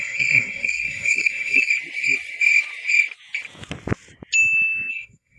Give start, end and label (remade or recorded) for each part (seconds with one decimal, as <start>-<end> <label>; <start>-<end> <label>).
0.0-1.7 remade; 1.7-4.9 recorded; 4.9-5.4 remade